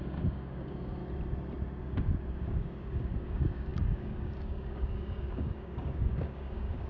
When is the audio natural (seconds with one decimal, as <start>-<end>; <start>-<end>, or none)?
1.0-1.8